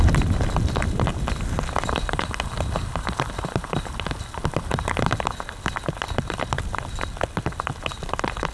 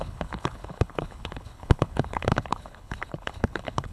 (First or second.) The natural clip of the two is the first